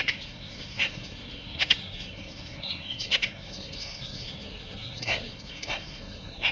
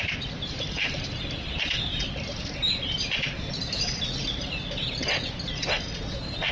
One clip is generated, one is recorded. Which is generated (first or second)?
first